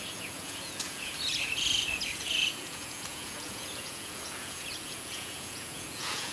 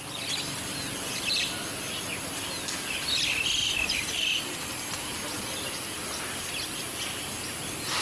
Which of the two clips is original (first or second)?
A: second